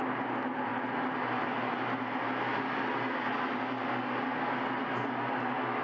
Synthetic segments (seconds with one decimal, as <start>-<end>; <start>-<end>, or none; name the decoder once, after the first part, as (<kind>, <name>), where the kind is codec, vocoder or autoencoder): none